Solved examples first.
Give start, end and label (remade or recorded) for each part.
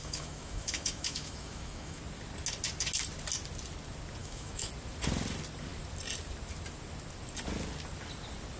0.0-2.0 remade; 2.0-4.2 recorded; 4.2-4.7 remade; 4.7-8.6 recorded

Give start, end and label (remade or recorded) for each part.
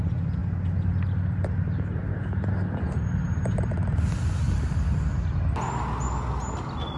0.0-7.0 recorded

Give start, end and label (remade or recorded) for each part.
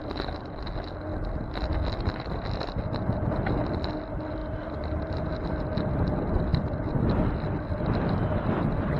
0.0-9.0 recorded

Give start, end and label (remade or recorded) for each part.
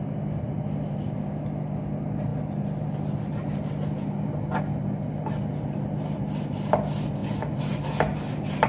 0.0-8.7 recorded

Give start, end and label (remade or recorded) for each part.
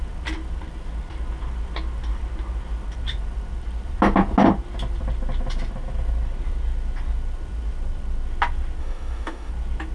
0.0-8.8 recorded; 8.8-9.5 remade; 9.5-9.9 recorded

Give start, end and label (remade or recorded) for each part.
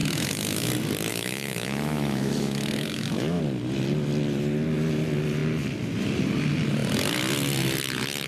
0.0-0.7 remade; 0.7-1.1 recorded; 1.1-3.4 remade; 3.4-8.3 recorded